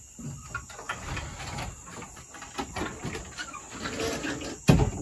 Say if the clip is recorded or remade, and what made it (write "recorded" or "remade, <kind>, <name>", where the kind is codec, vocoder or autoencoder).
recorded